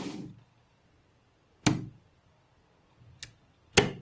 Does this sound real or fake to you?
real